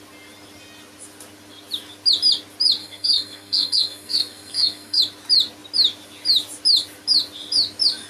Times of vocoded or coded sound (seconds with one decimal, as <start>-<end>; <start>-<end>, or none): 2.8-5.0